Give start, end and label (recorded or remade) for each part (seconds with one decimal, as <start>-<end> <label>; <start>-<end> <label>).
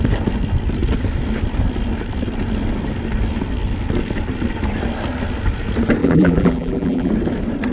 0.0-6.0 recorded; 6.0-7.1 remade; 7.1-7.7 recorded